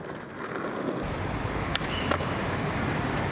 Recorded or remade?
recorded